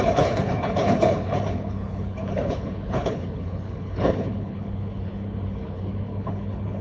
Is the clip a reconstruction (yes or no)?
yes